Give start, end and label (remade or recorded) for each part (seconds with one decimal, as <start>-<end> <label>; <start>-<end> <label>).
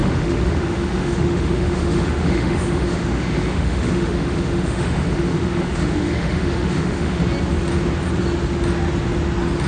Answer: 0.0-7.2 remade; 7.2-9.7 recorded